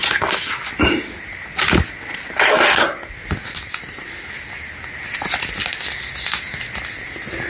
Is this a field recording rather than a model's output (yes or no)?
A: yes